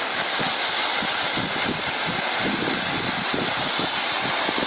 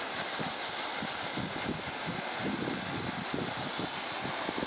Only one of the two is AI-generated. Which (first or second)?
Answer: first